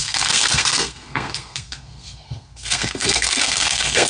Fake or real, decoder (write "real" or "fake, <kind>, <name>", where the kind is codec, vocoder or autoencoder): fake, codec, SNAC